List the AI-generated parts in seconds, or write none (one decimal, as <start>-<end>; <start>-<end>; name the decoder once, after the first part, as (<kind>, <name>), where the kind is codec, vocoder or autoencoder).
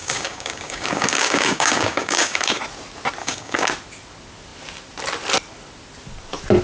0.0-2.6 (codec, DAC); 3.2-3.7